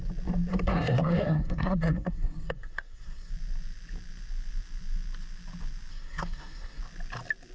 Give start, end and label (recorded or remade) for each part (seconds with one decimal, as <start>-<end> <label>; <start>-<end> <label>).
0.0-0.5 recorded; 0.5-3.3 remade; 3.3-5.9 recorded; 5.9-6.8 remade; 6.8-7.5 recorded